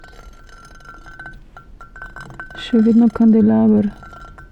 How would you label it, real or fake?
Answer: real